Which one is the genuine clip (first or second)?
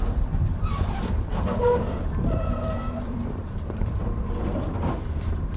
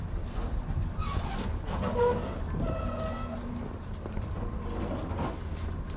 second